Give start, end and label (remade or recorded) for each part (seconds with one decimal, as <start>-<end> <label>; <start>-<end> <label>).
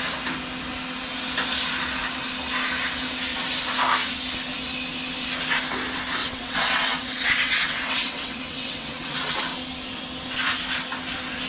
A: 0.0-6.2 recorded; 6.2-9.4 remade; 9.4-11.5 recorded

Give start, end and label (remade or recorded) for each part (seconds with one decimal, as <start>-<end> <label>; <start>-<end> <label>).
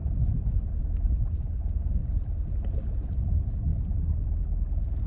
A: 0.0-0.8 remade; 0.8-5.1 recorded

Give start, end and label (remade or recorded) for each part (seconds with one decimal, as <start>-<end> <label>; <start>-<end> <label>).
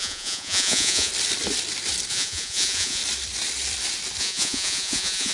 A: 0.0-1.1 remade; 1.1-2.1 recorded; 2.1-3.0 remade; 3.0-4.2 recorded; 4.2-5.3 remade